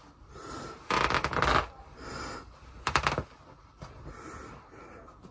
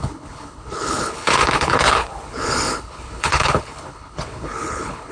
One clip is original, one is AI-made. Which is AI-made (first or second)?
second